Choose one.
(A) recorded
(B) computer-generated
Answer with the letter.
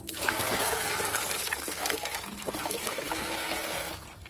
B